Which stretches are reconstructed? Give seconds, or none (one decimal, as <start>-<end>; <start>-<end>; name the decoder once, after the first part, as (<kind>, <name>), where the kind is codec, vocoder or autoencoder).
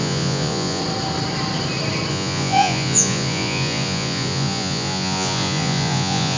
0.0-0.8 (vocoder, Vocos); 2.1-6.4